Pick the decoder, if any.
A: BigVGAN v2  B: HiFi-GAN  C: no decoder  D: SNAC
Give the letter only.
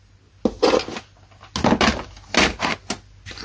C